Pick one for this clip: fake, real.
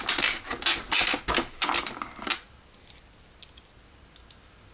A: real